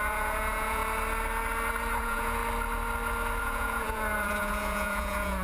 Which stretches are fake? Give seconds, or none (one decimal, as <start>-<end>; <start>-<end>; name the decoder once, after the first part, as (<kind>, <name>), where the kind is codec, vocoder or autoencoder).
0.0-0.8 (vocoder, Vocos); 2.0-2.4; 3.4-5.4